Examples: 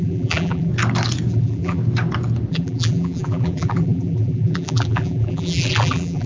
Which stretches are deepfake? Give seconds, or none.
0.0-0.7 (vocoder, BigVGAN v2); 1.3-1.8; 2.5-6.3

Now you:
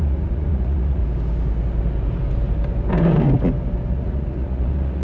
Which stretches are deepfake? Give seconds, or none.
0.0-1.0 (vocoder, Vocos); 3.9-5.0

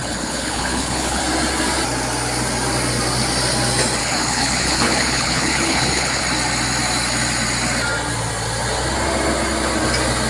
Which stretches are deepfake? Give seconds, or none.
0.0-1.2 (codec, HILCodec); 4.0-6.2

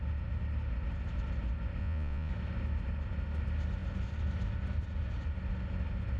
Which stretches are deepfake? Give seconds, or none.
1.8-2.3 (vocoder, Vocos)

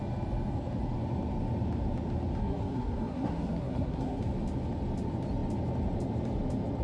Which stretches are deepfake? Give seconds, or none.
2.4-4.2 (codec, SNAC)

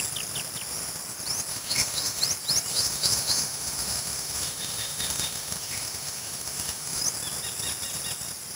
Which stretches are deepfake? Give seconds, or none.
1.5-2.2 (autoencoder, DAC-VAE); 2.7-7.0

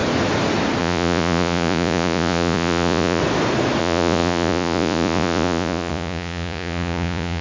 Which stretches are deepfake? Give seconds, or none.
0.8-3.2 (vocoder, Vocos); 3.8-7.4

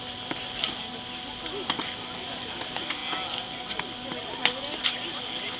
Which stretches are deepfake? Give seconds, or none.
none